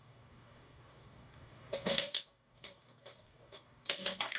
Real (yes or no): no